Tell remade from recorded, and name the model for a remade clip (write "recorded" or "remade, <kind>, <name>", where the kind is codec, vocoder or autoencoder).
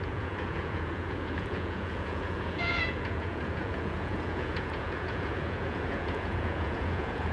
remade, vocoder, Vocos